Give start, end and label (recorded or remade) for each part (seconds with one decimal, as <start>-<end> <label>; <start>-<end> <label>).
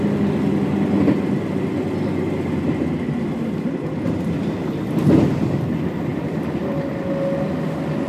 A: 0.0-8.1 recorded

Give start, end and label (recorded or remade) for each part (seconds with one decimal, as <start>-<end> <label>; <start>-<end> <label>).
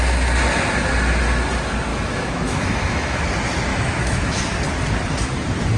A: 0.0-1.9 recorded; 1.9-3.2 remade; 3.2-3.7 recorded; 3.7-4.4 remade; 4.4-5.8 recorded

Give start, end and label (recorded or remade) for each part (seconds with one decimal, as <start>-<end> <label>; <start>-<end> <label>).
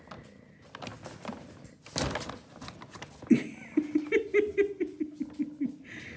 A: 0.0-6.2 recorded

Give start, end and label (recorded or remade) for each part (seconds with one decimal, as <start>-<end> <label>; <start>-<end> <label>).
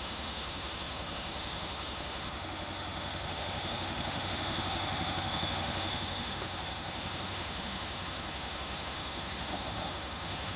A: 0.0-10.6 remade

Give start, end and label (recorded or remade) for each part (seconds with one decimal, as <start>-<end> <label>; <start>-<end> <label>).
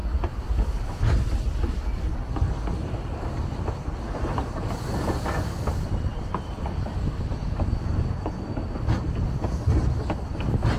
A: 0.0-10.8 recorded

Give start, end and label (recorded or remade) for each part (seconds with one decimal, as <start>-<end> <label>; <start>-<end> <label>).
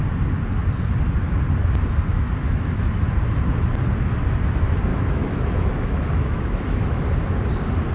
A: 0.0-2.1 recorded; 2.1-3.0 remade; 3.0-4.9 recorded; 4.9-7.0 remade; 7.0-7.9 recorded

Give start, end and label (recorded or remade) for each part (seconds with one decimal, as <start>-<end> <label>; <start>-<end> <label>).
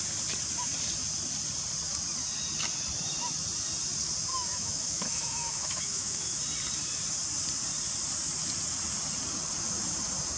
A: 0.0-4.3 recorded; 4.3-6.4 remade; 6.4-10.4 recorded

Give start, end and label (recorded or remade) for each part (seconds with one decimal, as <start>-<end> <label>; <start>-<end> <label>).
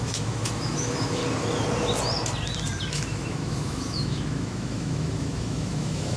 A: 0.0-1.2 remade; 1.2-2.9 recorded; 2.9-6.2 remade